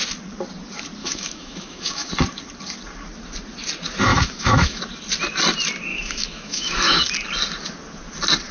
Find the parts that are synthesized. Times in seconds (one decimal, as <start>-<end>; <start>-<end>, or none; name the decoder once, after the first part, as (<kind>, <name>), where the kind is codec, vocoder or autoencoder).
1.0-2.1 (autoencoder, DAC-VAE); 4.1-4.8; 5.9-7.0